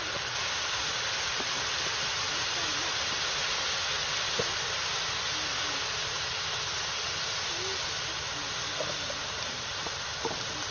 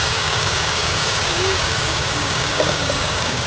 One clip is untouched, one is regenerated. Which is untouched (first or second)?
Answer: first